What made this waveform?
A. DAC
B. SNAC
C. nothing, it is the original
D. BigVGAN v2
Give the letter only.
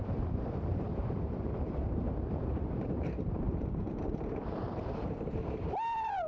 D